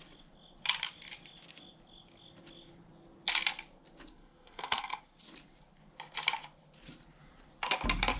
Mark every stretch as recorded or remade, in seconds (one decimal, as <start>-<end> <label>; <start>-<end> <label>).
0.0-4.1 recorded; 4.1-5.0 remade; 5.0-8.2 recorded